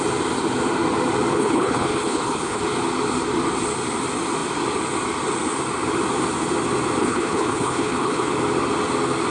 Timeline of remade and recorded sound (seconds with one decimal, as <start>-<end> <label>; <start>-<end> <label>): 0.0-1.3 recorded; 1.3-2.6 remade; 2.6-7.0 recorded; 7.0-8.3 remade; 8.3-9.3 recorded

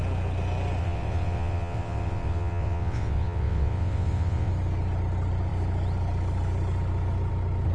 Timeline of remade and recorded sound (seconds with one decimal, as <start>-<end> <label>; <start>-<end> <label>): 0.0-0.8 recorded; 0.8-4.5 remade; 4.5-7.7 recorded

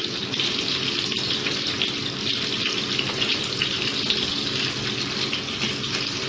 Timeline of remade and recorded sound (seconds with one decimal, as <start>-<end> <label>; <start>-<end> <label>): 0.0-6.3 recorded

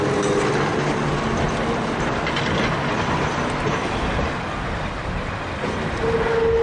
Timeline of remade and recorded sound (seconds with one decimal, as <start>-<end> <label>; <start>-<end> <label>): 0.0-6.6 recorded

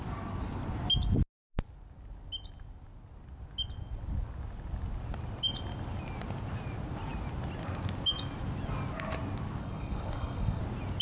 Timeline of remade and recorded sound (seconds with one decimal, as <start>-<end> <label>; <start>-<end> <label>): 0.0-9.6 recorded; 9.6-10.6 remade; 10.6-11.0 recorded

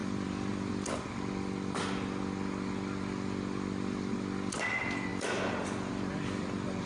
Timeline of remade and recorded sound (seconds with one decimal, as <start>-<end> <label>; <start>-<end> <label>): 0.0-0.7 remade; 0.7-5.1 recorded; 5.1-6.9 remade